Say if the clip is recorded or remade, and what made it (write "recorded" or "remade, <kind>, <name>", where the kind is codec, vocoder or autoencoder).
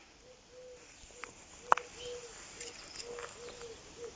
recorded